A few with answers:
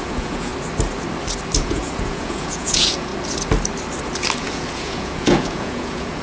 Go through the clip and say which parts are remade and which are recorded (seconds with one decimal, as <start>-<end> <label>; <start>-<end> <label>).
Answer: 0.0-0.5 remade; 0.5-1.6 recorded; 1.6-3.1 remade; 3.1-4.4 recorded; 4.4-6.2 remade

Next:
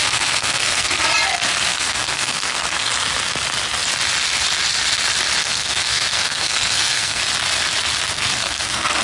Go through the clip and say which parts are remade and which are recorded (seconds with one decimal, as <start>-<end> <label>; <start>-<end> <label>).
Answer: 0.0-0.9 remade; 0.9-1.7 recorded; 1.7-2.9 remade; 2.9-5.4 recorded; 5.4-7.2 remade; 7.2-8.1 recorded; 8.1-9.0 remade

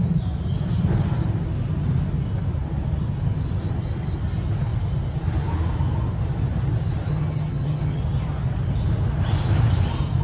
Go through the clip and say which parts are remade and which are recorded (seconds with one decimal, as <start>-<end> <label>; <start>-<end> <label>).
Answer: 0.0-7.1 recorded; 7.1-8.0 remade; 8.0-10.2 recorded